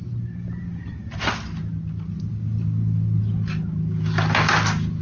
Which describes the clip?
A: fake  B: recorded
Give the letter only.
B